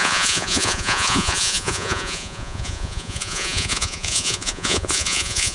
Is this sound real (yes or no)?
no